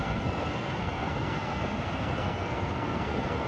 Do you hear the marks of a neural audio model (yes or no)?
yes